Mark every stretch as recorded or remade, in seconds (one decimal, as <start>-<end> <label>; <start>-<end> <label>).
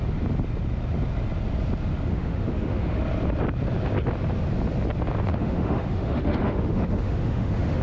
0.0-2.1 recorded; 2.1-3.0 remade; 3.0-5.3 recorded; 5.3-7.8 remade